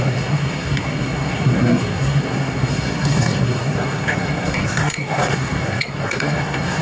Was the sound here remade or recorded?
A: remade